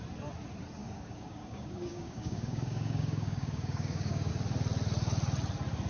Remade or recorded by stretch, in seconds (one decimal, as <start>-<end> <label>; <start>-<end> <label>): 0.0-0.8 recorded; 0.8-4.3 remade; 4.3-5.9 recorded